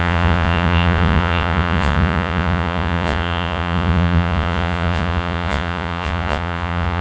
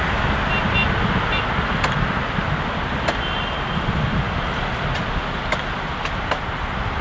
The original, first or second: second